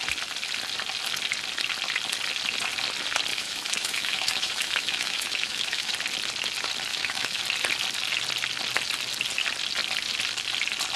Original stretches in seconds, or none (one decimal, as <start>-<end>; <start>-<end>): 0.0-3.3; 5.9-6.9; 7.4-11.0